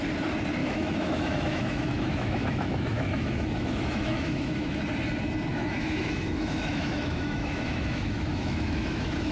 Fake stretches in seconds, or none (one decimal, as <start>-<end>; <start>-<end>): 0.6-4.8; 5.5-9.3